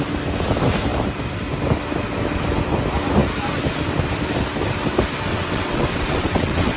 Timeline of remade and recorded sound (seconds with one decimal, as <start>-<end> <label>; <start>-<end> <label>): 0.0-5.3 recorded; 5.3-6.8 remade